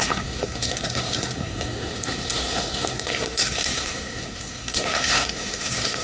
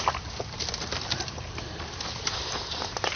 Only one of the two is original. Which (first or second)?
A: second